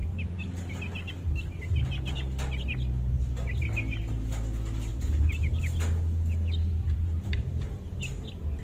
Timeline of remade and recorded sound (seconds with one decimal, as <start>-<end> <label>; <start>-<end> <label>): 0.0-4.9 recorded; 4.9-5.4 remade; 5.4-6.6 recorded; 6.6-7.8 remade; 7.8-8.6 recorded